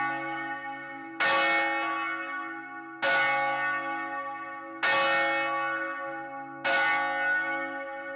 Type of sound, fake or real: real